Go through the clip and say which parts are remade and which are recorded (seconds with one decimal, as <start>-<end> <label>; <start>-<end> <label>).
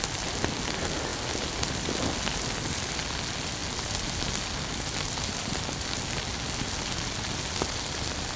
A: 0.0-8.4 recorded